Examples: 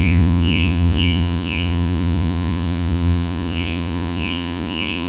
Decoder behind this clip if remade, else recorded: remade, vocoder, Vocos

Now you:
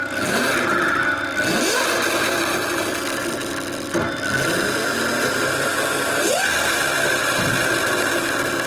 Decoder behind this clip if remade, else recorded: recorded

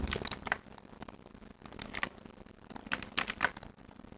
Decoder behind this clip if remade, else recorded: remade, vocoder, BigVGAN v2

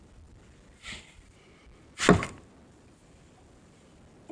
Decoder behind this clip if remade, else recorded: recorded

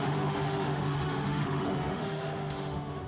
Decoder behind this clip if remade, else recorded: remade, autoencoder, DAC-VAE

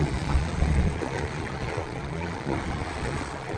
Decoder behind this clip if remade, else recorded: remade, vocoder, Vocos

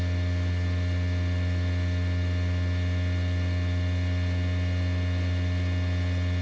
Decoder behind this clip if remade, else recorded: recorded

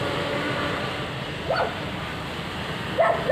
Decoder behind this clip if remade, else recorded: recorded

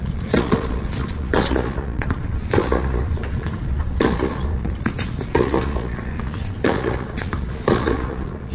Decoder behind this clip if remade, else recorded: remade, vocoder, Vocos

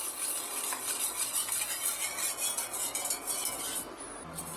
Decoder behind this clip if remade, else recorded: recorded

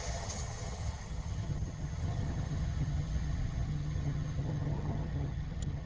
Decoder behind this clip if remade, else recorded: remade, vocoder, HiFi-GAN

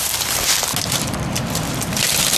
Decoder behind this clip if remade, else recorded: recorded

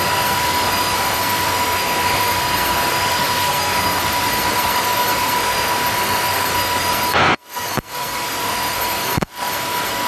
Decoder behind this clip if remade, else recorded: remade, codec, SNAC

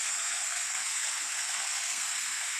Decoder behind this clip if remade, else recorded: remade, codec, SNAC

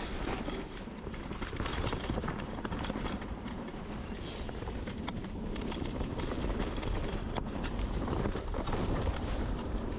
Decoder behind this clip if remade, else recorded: remade, vocoder, BigVGAN v2